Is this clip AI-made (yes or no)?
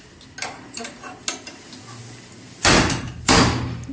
no